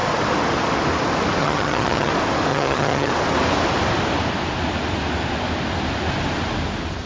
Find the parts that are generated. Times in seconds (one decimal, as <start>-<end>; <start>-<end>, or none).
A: 1.4-2.1; 2.5-3.1